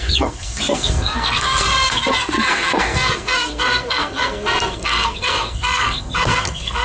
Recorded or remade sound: remade